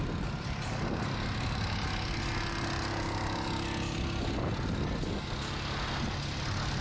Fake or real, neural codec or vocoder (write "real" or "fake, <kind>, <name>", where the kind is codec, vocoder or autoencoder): real